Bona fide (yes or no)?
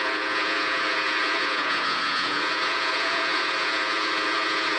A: no